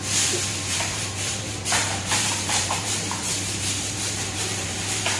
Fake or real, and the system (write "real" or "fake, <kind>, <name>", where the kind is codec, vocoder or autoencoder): fake, vocoder, BigVGAN v2